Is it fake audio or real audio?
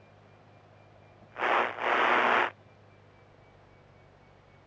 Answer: real